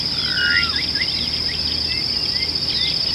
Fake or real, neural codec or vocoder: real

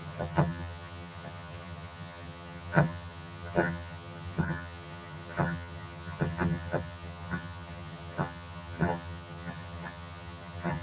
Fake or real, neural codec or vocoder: fake, vocoder, HiFi-GAN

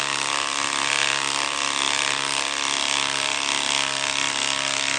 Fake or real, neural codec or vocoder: real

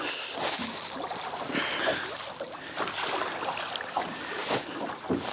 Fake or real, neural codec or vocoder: real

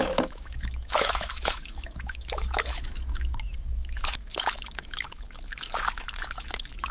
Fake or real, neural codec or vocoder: fake, autoencoder, DAC-VAE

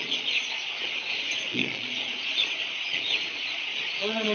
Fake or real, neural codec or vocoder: fake, vocoder, Vocos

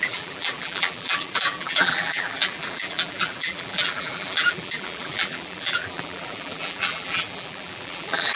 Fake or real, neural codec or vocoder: fake, vocoder, BigVGAN v2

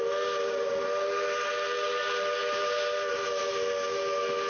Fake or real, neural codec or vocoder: real